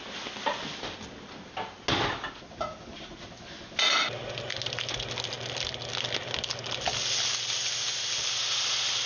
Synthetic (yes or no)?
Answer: no